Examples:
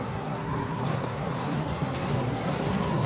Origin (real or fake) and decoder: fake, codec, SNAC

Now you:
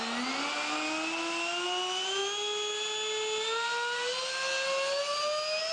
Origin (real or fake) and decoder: real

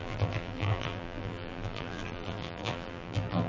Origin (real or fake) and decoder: fake, vocoder, BigVGAN v2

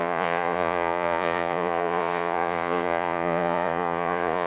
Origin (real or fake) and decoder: fake, vocoder, Vocos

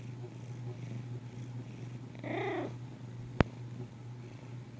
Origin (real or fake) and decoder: real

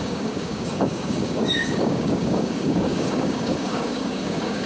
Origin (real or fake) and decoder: fake, codec, DAC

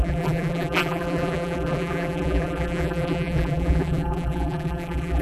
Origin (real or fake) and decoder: fake, vocoder, BigVGAN v2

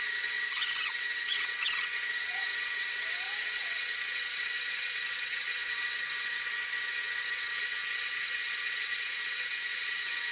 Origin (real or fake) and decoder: fake, vocoder, WaveNeXt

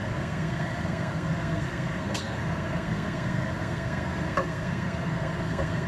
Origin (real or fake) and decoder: fake, codec, SNAC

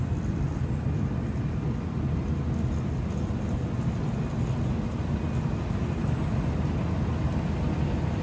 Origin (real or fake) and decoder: real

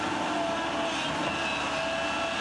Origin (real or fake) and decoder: real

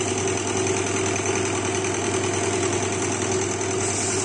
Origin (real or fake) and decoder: real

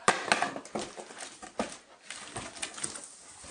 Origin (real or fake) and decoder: real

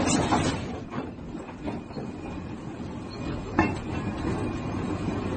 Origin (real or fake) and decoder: real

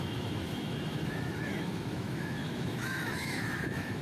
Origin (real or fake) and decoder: fake, autoencoder, DAC-VAE